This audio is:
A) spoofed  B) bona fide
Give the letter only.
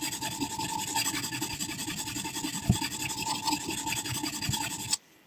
B